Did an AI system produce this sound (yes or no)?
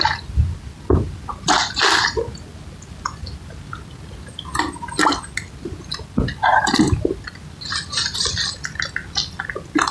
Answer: no